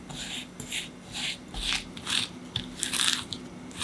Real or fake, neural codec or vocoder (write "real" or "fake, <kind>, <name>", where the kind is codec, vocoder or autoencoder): real